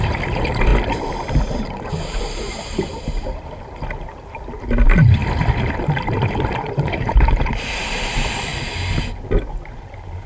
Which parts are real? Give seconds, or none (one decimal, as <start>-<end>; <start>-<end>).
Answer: 0.7-2.5; 5.2-5.9; 8.5-10.3